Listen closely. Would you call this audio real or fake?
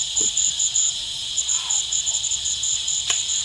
fake